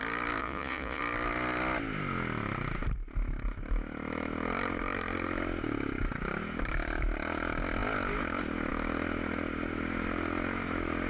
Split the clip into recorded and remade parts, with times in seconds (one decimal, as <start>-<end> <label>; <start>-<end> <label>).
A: 0.0-0.4 recorded; 0.4-1.0 remade; 1.0-11.1 recorded